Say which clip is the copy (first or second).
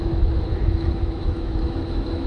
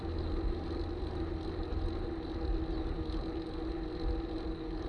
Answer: first